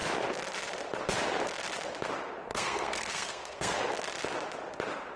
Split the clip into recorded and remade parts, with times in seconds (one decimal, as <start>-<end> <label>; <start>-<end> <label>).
0.0-2.5 recorded; 2.5-3.8 remade; 3.8-5.2 recorded